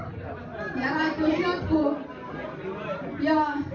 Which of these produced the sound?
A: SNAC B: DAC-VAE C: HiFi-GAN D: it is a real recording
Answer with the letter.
D